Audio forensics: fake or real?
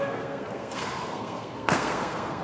fake